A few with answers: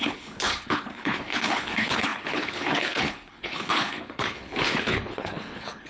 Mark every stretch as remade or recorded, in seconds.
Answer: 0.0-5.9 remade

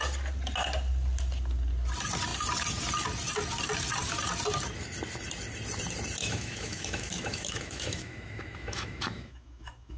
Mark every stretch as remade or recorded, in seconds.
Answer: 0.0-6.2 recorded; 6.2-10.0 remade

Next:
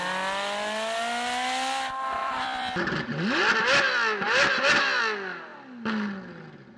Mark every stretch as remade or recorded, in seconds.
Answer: 0.0-2.2 recorded; 2.2-5.0 remade; 5.0-6.8 recorded

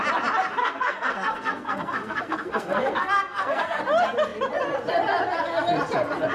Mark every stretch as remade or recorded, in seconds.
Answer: 0.0-0.6 recorded; 0.6-3.8 remade; 3.8-6.3 recorded